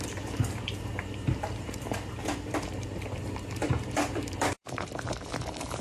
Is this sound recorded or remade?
remade